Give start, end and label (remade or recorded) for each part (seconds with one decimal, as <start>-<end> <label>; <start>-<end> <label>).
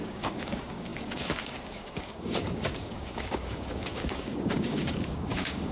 0.0-5.7 remade